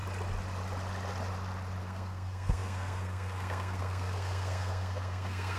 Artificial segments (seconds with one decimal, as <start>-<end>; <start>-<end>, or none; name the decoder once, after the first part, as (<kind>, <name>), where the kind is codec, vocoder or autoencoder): 1.8-5.6 (codec, SNAC)